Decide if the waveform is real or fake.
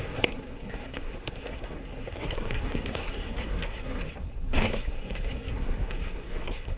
fake